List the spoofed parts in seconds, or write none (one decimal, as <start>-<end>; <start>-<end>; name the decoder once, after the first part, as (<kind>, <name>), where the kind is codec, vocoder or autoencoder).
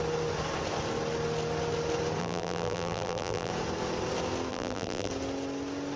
2.2-3.5 (vocoder, BigVGAN v2); 4.5-5.1